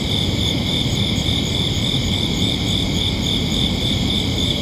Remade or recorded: remade